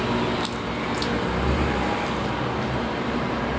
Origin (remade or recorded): recorded